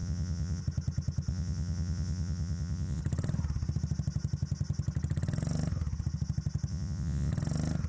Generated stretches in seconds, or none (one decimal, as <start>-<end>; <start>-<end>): 0.0-0.6; 1.3-3.0; 6.7-7.3